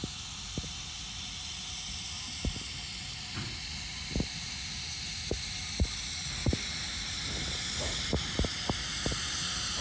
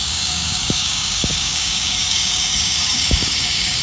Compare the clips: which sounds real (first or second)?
first